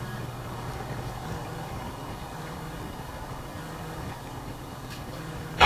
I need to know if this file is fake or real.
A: fake